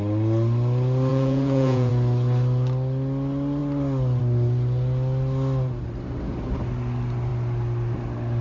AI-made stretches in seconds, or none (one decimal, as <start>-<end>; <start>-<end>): 1.1-1.9